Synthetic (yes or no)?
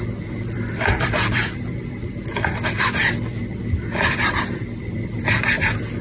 yes